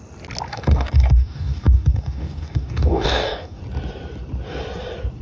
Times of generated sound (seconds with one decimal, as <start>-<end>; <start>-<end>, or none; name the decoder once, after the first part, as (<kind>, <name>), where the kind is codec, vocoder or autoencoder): 0.5-3.6 (codec, DAC)

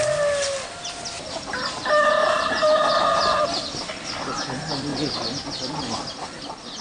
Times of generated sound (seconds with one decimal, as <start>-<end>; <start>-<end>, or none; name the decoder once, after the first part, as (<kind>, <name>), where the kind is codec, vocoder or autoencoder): 2.2-2.9 (vocoder, BigVGAN v2)

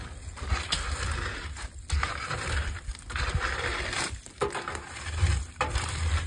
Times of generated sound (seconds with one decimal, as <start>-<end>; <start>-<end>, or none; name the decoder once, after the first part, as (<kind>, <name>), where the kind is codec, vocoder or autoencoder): none

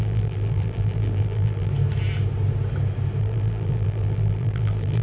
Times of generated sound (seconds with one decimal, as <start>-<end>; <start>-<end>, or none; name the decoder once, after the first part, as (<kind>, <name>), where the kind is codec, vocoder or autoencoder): 0.0-1.7 (vocoder, BigVGAN v2); 3.2-5.0

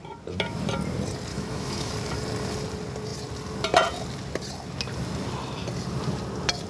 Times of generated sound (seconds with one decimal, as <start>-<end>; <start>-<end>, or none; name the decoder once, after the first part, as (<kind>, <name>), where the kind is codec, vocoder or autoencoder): 1.3-1.9 (autoencoder, DAC-VAE)

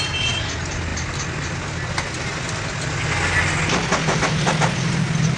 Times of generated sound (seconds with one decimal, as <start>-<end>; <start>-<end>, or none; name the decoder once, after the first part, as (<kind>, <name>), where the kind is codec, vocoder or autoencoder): none

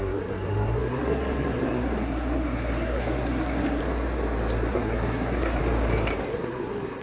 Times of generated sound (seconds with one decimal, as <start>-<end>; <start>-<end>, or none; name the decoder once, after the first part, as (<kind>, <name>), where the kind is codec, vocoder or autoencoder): 0.0-3.8 (codec, SNAC); 4.7-5.6; 6.3-7.0